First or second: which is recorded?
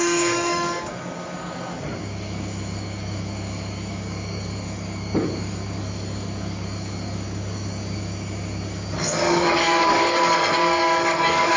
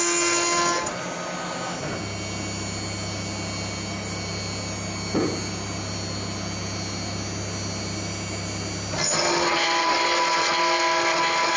second